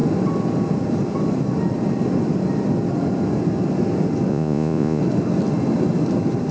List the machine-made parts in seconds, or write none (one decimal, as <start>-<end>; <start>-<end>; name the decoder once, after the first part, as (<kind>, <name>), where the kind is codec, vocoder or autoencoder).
4.3-5.0 (vocoder, Vocos)